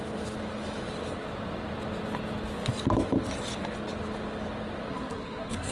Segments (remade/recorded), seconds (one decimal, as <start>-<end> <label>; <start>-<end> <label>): 0.0-4.9 recorded; 4.9-5.7 remade